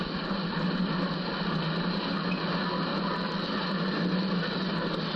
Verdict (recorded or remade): recorded